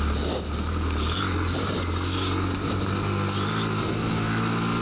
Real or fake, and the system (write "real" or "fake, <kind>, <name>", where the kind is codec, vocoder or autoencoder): real